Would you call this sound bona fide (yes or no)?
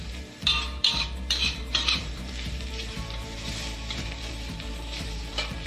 no